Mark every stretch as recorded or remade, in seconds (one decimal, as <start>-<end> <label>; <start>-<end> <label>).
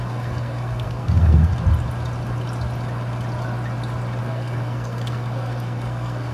0.0-1.5 remade; 1.5-4.2 recorded; 4.2-6.3 remade